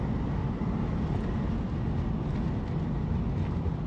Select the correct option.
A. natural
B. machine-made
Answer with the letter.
A